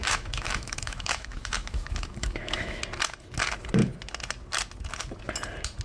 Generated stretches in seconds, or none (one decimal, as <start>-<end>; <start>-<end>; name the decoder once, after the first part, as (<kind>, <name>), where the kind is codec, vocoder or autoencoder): 0.0-2.8 (autoencoder, DAC-VAE)